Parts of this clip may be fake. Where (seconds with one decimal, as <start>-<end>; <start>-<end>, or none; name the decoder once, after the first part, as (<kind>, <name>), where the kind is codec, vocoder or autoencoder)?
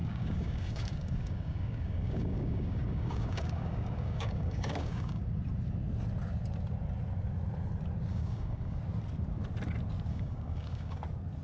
0.0-5.2 (codec, DAC); 8.1-8.8; 10.1-11.0